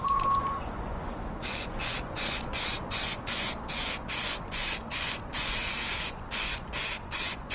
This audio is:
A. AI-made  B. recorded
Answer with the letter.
A